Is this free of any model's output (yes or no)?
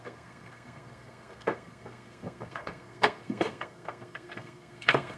no